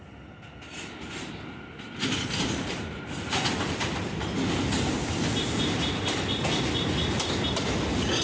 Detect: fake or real real